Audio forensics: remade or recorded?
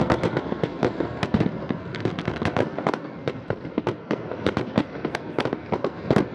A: remade